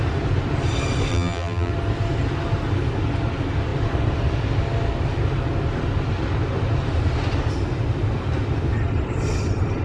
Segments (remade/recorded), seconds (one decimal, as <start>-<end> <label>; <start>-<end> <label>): 0.0-1.1 recorded; 1.1-1.7 remade; 1.7-9.8 recorded